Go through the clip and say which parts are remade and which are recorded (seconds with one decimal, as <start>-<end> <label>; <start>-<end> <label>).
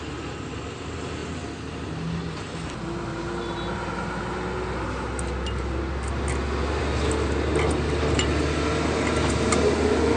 0.0-10.2 recorded